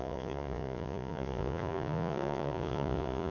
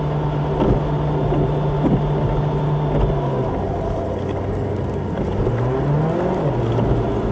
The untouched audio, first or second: second